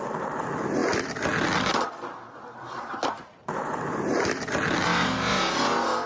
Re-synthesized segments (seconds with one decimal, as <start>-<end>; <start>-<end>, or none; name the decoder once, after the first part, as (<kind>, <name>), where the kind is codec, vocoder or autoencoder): none